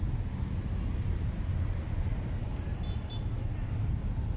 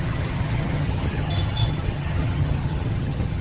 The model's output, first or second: second